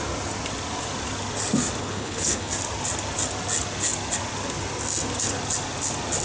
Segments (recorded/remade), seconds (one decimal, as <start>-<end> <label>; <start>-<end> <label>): 0.0-1.8 recorded; 1.8-2.5 remade; 2.5-6.2 recorded